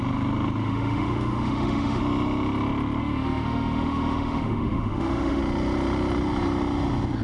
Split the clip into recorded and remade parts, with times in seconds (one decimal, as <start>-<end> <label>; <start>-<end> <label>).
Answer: 0.0-0.6 recorded; 0.6-2.0 remade; 2.0-3.0 recorded; 3.0-5.4 remade; 5.4-7.2 recorded